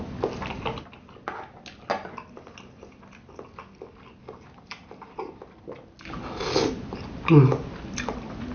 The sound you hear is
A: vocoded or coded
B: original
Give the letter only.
B